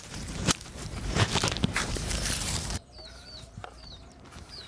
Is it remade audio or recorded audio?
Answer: remade